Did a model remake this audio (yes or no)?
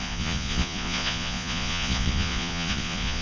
yes